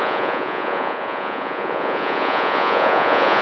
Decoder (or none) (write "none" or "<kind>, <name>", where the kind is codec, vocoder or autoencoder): vocoder, Vocos